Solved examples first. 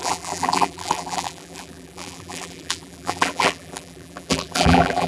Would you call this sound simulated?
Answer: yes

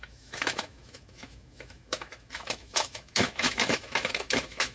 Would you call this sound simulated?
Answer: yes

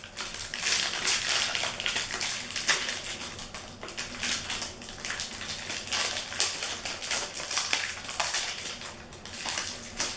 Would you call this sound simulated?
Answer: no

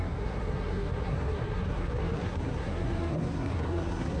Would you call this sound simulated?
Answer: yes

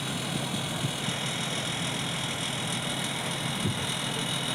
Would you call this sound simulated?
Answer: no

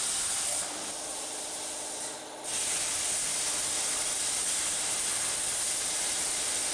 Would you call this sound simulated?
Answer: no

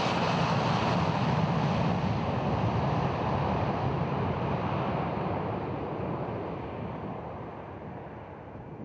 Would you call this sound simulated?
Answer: no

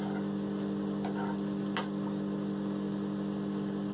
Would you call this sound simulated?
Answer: no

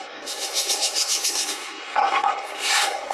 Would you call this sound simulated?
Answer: yes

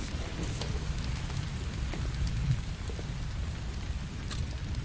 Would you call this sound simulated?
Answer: no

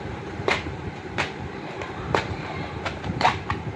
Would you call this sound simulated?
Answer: yes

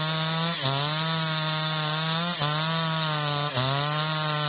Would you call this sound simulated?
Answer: no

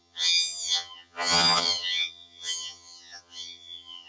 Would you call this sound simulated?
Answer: yes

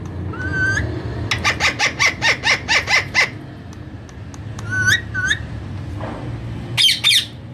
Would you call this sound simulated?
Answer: no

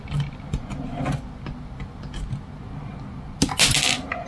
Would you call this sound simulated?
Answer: no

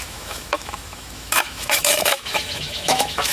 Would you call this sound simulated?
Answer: yes